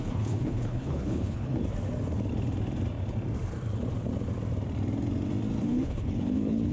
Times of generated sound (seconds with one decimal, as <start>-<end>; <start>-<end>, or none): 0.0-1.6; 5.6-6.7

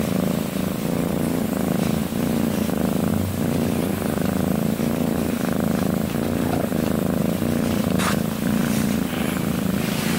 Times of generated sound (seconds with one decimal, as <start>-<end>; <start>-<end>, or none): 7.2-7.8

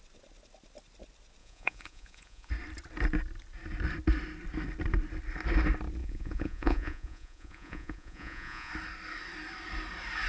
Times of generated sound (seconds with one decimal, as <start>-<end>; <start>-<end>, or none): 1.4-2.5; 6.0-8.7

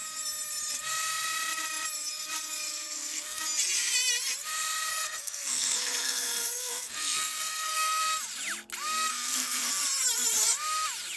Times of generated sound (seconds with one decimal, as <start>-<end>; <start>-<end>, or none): 2.7-3.4; 4.9-8.0; 9.1-9.7

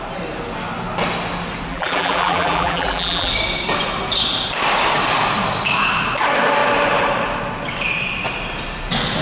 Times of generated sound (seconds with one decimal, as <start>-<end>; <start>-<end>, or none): 1.7-3.3